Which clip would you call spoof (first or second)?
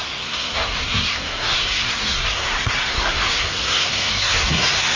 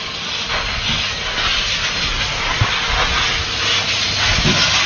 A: first